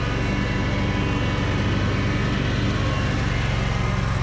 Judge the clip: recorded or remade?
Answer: recorded